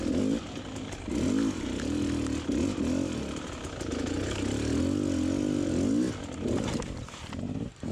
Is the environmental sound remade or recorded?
recorded